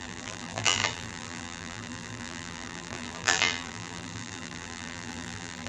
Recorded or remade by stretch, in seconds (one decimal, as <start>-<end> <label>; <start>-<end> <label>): 0.0-5.7 remade